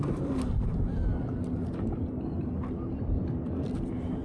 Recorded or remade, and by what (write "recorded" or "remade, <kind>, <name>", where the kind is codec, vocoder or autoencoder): recorded